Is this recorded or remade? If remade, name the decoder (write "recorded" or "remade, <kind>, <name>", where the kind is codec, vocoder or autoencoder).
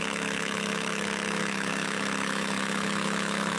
remade, autoencoder, DAC-VAE